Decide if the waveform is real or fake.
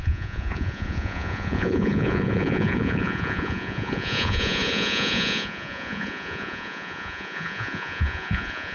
fake